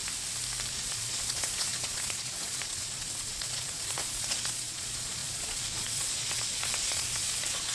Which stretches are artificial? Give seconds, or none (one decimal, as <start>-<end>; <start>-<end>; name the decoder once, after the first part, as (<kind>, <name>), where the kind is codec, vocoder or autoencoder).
0.7-7.7 (vocoder, Vocos)